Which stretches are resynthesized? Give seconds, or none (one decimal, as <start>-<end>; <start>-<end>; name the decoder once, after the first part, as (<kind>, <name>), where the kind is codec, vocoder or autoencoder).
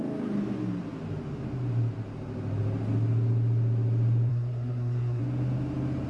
4.3-5.2 (codec, SNAC)